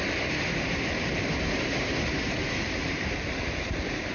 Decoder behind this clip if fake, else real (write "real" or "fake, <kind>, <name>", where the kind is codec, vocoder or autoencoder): fake, vocoder, BigVGAN v2